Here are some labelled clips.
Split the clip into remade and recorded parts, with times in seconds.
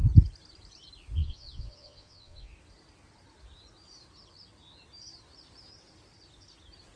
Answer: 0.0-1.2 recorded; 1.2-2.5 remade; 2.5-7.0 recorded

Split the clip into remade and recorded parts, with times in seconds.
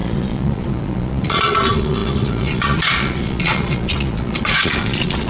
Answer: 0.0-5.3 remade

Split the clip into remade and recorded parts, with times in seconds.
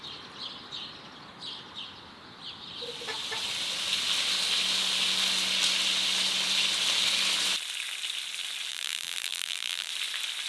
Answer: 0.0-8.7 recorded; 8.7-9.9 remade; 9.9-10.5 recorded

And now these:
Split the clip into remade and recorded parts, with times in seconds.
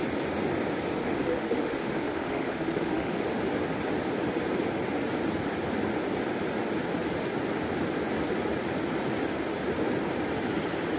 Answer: 0.0-1.0 recorded; 1.0-3.2 remade; 3.2-11.0 recorded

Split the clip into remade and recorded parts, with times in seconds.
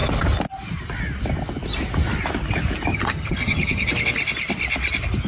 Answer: 0.0-2.9 recorded; 2.9-3.9 remade; 3.9-5.3 recorded